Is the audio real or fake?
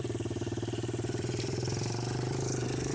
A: fake